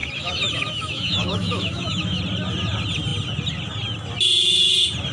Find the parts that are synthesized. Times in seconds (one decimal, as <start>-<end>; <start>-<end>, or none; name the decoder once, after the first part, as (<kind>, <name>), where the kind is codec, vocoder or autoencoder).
0.0-2.2 (autoencoder, DAC-VAE)